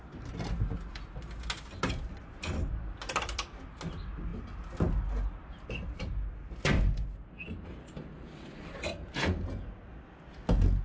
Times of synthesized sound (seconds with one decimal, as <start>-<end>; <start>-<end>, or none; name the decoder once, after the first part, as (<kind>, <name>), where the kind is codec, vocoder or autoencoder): none

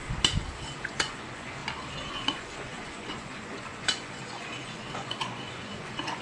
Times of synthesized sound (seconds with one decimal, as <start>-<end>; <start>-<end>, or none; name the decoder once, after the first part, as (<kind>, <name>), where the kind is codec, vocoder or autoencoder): 0.8-1.6 (vocoder, Vocos); 2.1-6.2

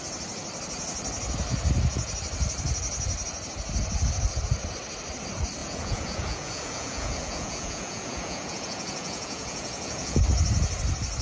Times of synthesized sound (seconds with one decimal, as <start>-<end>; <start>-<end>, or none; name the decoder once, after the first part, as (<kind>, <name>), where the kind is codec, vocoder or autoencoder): 5.6-10.2 (vocoder, Vocos)

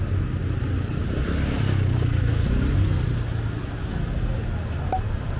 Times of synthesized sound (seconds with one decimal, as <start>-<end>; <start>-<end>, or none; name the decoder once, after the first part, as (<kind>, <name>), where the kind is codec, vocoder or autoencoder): none

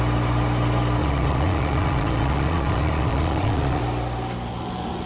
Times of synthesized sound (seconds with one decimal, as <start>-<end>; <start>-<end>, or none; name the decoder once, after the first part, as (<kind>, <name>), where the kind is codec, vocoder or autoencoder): 1.0-3.8 (vocoder, Vocos)

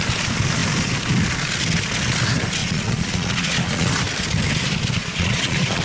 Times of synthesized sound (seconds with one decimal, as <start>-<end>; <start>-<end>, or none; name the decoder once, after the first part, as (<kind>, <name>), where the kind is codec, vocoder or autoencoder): 2.6-3.9 (vocoder, Vocos); 5.0-5.8

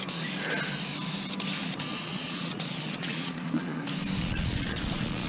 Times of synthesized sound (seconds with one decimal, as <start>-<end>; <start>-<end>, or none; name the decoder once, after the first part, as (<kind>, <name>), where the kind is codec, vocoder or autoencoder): 1.6-3.8 (vocoder, Vocos); 4.2-5.3